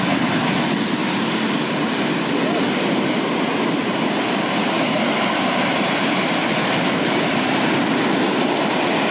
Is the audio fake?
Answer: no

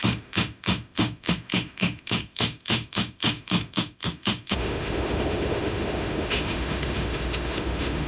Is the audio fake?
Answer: yes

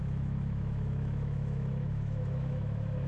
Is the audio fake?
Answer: yes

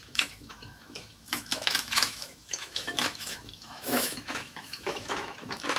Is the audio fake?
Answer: yes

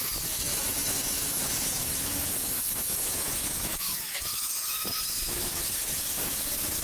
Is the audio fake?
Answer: yes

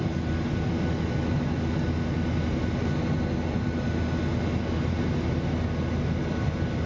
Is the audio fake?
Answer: no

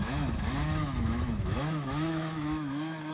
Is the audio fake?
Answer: yes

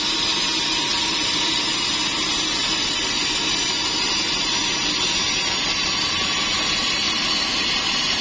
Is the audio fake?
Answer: no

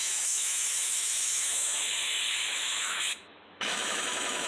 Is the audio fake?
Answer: yes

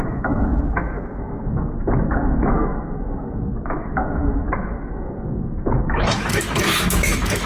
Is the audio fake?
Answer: yes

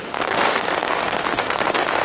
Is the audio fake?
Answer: yes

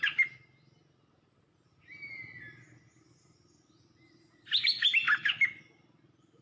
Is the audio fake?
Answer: no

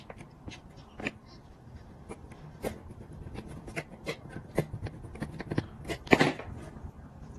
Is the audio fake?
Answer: no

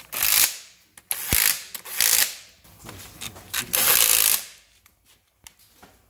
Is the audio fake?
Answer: no